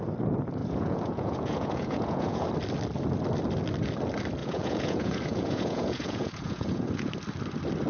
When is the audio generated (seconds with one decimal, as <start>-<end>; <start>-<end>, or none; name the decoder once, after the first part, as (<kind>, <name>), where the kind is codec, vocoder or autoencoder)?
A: 0.6-2.5 (vocoder, Vocos); 4.4-7.1